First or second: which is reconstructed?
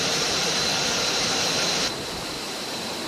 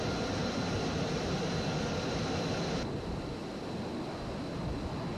first